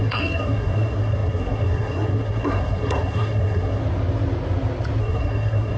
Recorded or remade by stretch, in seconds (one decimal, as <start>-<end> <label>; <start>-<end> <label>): 0.0-3.8 remade; 3.8-5.0 recorded; 5.0-5.8 remade